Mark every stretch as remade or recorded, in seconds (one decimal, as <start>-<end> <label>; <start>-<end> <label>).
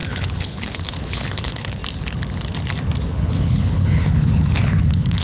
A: 0.0-1.8 remade; 1.8-3.1 recorded; 3.1-5.2 remade